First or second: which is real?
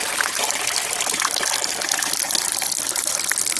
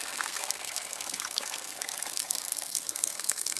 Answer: first